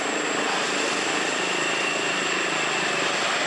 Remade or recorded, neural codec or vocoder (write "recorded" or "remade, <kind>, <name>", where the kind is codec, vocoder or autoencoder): recorded